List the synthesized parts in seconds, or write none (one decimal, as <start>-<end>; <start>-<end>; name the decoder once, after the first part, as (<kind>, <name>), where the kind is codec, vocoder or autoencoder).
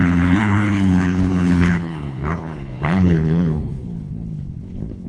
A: 0.0-5.1 (codec, HILCodec)